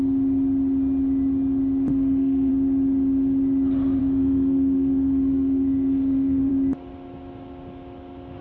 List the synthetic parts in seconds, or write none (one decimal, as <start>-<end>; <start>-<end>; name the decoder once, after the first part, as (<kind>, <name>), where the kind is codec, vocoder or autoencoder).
1.9-2.5 (codec, SNAC); 4.0-6.5